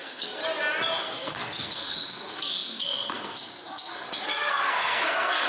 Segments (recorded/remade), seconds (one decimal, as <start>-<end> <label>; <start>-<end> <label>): 0.0-0.4 remade; 0.4-1.0 recorded; 1.0-5.5 remade

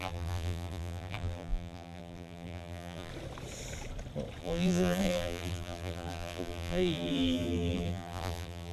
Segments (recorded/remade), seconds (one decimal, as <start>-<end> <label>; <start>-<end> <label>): 0.0-3.1 remade; 3.1-4.4 recorded; 4.4-8.7 remade

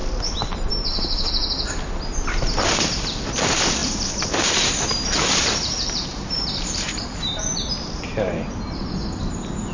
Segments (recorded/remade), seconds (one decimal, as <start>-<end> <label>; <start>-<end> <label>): 0.0-3.8 recorded; 3.8-8.9 remade; 8.9-9.7 recorded